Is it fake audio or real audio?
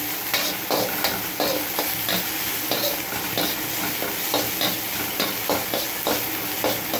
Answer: real